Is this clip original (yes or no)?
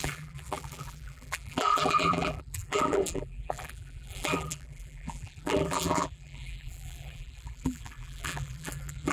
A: no